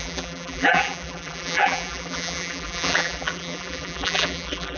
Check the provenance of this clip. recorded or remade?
remade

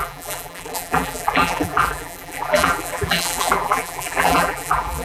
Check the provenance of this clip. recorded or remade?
remade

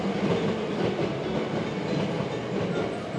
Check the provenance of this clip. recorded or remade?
recorded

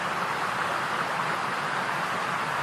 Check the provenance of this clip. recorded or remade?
recorded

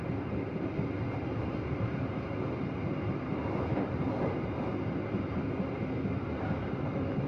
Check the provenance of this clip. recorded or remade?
recorded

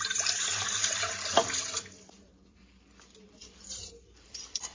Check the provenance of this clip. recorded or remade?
remade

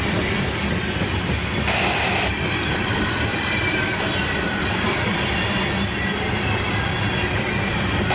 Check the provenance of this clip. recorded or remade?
remade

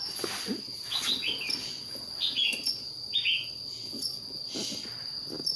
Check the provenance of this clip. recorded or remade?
recorded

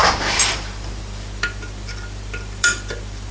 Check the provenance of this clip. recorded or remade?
remade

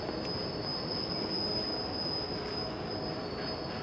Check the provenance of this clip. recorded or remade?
recorded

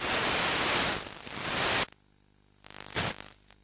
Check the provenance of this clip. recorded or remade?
recorded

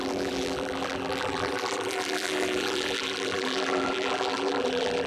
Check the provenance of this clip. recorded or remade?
remade